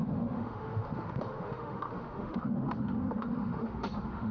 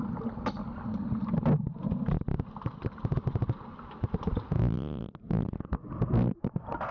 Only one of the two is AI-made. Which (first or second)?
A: first